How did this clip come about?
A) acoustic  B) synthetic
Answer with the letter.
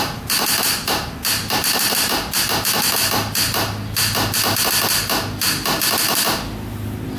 A